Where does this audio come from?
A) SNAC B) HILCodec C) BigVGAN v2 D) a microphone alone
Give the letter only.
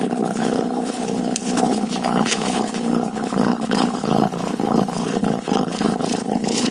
B